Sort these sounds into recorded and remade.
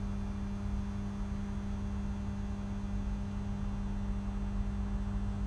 recorded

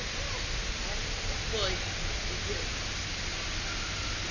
recorded